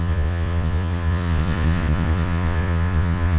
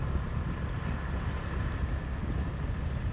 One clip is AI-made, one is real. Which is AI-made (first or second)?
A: first